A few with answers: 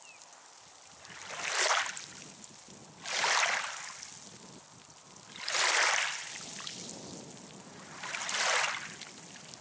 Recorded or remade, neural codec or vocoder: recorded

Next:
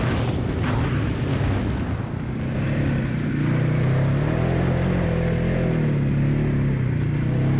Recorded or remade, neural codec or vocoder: recorded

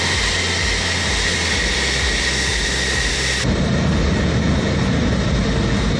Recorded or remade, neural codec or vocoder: recorded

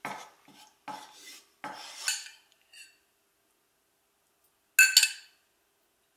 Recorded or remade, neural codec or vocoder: recorded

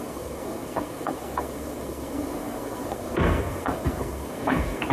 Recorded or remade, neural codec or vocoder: remade, codec, SNAC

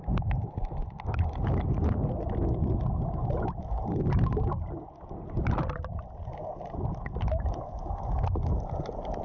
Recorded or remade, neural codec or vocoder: recorded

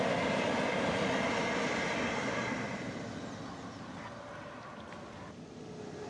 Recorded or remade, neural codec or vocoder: recorded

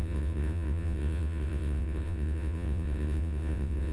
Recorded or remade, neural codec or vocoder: remade, vocoder, WaveNeXt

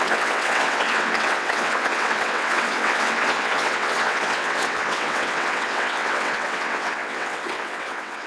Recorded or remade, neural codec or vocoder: remade, vocoder, WaveNeXt